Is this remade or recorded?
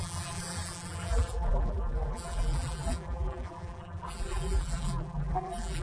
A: remade